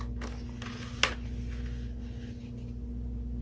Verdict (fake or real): real